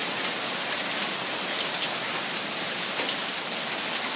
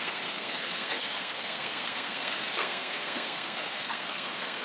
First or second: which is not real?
second